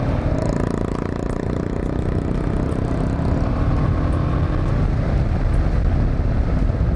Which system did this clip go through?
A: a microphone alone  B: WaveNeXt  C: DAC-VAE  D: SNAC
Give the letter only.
A